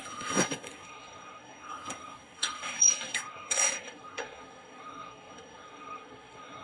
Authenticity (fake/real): fake